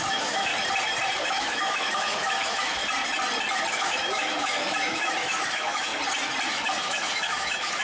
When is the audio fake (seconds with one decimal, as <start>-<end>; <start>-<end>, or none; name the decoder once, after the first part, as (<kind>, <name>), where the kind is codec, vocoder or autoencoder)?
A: 0.0-0.5 (autoencoder, DAC-VAE); 1.2-2.8; 3.7-5.9; 6.5-7.8